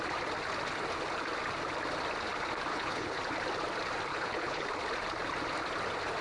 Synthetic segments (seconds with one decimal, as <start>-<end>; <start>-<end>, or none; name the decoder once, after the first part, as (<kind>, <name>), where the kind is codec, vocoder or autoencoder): 2.7-3.2 (codec, HILCodec); 4.1-4.7